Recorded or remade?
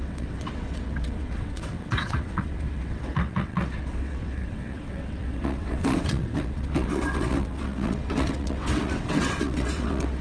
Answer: remade